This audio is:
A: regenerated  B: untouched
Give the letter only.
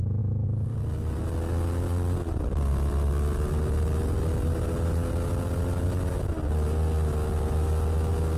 B